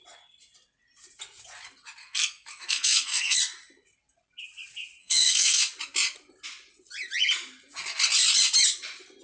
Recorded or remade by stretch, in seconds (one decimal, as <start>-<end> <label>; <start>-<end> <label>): 0.0-2.0 recorded; 2.0-3.4 remade; 3.4-5.0 recorded; 5.0-5.6 remade; 5.6-9.2 recorded